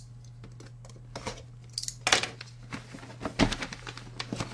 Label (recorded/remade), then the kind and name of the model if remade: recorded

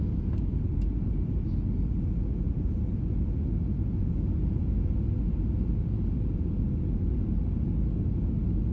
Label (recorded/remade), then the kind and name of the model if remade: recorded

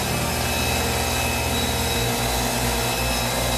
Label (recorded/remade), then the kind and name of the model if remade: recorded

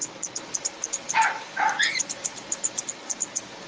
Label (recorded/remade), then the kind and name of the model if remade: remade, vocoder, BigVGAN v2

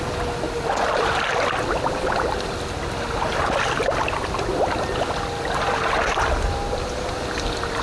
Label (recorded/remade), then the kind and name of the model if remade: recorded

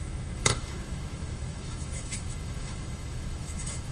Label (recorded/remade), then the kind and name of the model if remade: remade, autoencoder, DAC-VAE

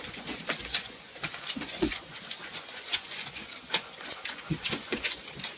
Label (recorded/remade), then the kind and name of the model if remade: remade, vocoder, Vocos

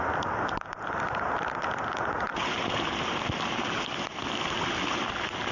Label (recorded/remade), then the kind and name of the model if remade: recorded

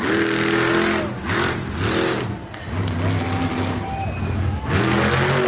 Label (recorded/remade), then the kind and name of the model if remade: recorded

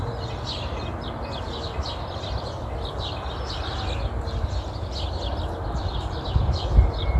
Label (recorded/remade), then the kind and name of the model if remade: recorded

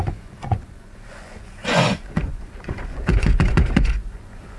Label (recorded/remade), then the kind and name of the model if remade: remade, vocoder, Vocos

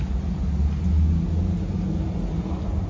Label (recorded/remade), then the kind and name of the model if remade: recorded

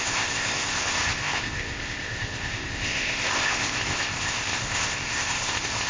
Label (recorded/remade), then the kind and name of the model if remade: remade, codec, ZipCodec